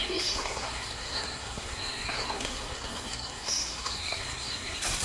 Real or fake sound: fake